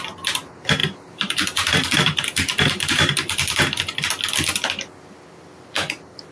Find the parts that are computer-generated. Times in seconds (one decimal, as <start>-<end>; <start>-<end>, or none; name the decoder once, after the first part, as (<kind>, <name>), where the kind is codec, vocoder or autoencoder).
0.8-3.6 (vocoder, BigVGAN v2)